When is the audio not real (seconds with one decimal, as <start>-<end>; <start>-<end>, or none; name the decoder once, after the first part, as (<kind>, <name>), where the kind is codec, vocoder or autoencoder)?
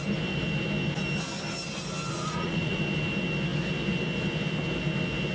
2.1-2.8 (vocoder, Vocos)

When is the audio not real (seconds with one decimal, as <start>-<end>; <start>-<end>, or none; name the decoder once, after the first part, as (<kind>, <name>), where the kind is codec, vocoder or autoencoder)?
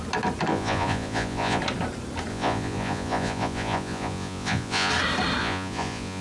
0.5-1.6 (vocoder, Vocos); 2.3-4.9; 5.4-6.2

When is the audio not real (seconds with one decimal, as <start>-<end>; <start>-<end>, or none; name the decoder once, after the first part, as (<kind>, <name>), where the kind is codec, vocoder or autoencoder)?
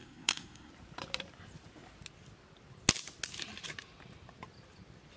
0.0-0.7 (codec, SNAC)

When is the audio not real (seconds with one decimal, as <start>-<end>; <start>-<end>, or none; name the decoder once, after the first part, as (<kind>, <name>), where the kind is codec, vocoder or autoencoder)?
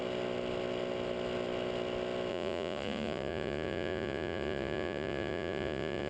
2.3-6.1 (vocoder, Vocos)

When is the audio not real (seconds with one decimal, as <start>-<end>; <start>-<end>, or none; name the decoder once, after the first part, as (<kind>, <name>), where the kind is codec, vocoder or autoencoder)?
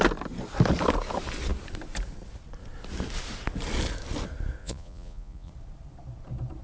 4.6-5.5 (vocoder, Vocos)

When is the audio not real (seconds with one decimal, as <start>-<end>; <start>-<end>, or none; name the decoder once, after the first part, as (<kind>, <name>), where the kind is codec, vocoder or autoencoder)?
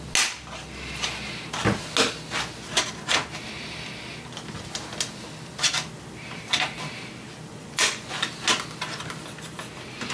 7.5-8.2 (vocoder, Vocos)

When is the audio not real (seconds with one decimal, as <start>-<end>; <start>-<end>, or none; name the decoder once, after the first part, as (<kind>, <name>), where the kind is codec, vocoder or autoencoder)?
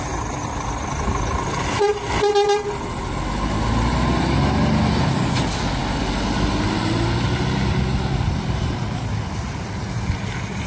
none